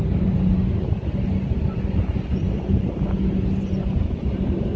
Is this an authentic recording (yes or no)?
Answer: yes